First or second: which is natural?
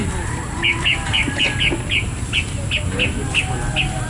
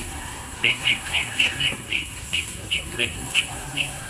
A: first